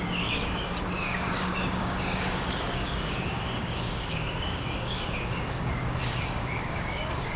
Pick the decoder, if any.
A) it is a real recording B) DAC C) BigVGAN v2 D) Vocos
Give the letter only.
B